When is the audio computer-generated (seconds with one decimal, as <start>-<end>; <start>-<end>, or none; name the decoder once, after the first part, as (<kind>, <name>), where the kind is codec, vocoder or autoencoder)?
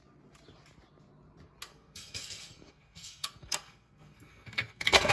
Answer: 1.7-5.1 (codec, SNAC)